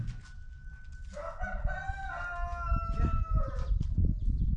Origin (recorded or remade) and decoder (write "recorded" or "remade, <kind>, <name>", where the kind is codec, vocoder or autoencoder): recorded